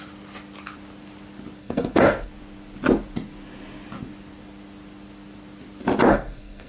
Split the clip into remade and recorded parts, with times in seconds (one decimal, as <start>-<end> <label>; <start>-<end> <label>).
0.0-1.6 recorded; 1.6-2.3 remade; 2.3-6.1 recorded; 6.1-6.7 remade